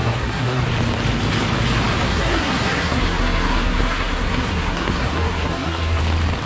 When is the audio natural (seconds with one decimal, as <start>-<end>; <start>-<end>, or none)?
0.6-2.1; 6.0-6.5